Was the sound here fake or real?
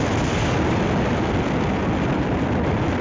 real